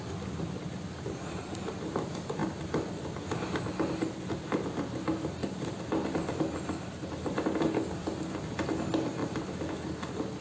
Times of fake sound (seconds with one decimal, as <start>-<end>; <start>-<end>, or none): none